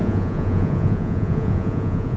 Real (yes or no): no